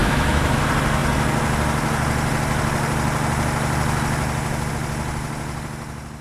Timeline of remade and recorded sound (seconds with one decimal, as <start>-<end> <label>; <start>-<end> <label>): 0.0-0.6 remade; 0.6-6.2 recorded

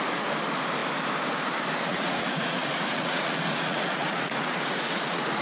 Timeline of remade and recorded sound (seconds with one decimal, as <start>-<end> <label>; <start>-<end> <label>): 0.0-1.9 recorded; 1.9-5.4 remade

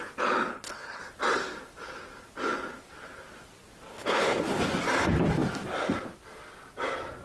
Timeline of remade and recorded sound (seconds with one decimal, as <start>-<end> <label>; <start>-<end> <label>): 0.0-0.5 recorded; 0.5-1.0 remade; 1.0-3.9 recorded; 3.9-4.6 remade; 4.6-7.2 recorded

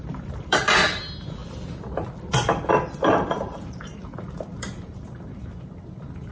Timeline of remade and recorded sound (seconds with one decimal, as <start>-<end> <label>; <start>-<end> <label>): 0.0-0.6 remade; 0.6-3.1 recorded; 3.1-6.3 remade

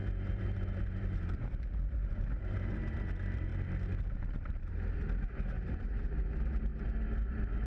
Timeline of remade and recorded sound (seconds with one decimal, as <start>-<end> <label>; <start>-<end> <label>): 0.0-3.5 remade; 3.5-4.0 recorded; 4.0-6.7 remade; 6.7-7.3 recorded; 7.3-7.7 remade